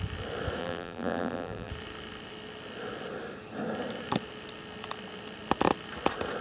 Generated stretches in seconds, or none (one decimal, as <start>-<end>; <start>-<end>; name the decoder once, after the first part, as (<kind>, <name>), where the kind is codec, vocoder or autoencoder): 0.6-1.7 (vocoder, BigVGAN v2)